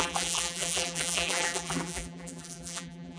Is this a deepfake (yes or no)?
yes